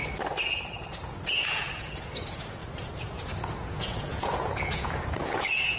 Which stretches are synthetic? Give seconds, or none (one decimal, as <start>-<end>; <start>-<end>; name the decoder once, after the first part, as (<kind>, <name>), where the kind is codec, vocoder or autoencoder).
0.8-5.8 (vocoder, Vocos)

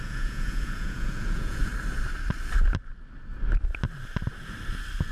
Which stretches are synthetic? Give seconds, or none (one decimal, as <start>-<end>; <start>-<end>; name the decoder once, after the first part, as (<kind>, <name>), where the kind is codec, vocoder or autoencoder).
0.0-1.7 (vocoder, Vocos)

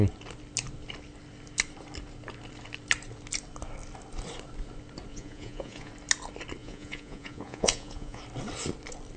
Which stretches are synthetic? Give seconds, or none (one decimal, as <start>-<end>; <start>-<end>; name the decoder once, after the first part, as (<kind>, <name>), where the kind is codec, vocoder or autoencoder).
5.1-5.9 (vocoder, Vocos); 6.6-8.2